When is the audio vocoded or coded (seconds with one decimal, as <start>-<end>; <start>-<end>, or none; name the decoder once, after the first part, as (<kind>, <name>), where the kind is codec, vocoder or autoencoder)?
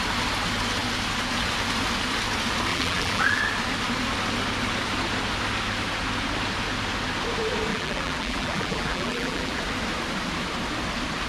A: 2.7-3.4 (vocoder, BigVGAN v2); 7.7-9.6